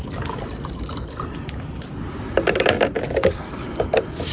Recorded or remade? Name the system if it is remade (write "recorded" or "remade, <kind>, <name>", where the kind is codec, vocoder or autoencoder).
recorded